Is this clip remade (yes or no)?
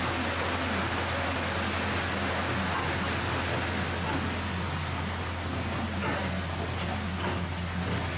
no